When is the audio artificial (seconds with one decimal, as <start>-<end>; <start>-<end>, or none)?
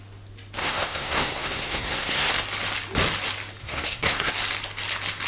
0.6-2.3; 3.6-4.3